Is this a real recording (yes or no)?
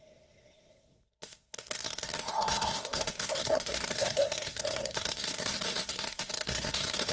no